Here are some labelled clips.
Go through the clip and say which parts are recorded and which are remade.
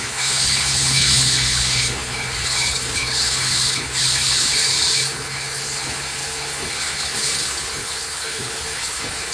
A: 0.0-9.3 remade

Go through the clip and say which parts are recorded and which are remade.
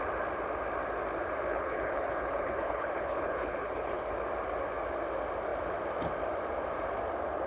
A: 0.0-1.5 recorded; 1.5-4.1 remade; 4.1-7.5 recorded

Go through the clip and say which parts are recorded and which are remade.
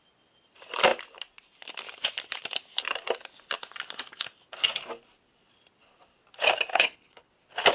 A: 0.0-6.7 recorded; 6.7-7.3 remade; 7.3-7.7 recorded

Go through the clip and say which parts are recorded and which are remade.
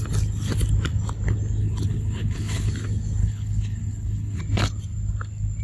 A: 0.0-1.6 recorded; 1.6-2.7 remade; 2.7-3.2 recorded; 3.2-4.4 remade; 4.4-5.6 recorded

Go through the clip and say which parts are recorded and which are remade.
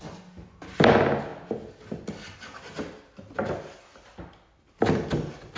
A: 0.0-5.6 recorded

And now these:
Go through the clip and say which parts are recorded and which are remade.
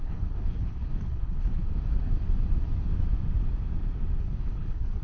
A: 0.0-1.6 remade; 1.6-4.2 recorded; 4.2-5.0 remade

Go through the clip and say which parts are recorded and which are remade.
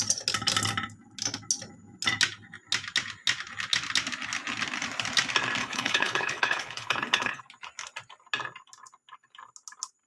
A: 0.0-5.6 recorded; 5.6-7.4 remade; 7.4-10.1 recorded